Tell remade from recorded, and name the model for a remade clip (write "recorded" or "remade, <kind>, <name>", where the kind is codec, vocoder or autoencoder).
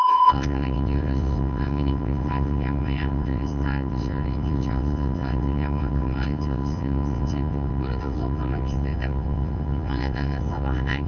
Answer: remade, vocoder, WaveNeXt